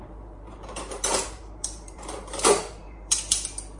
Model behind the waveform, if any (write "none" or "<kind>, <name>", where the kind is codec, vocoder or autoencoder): vocoder, BigVGAN v2